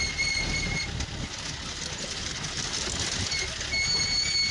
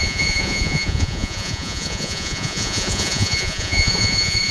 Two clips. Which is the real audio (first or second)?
first